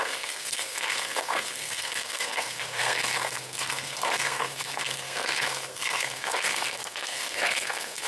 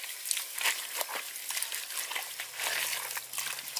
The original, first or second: second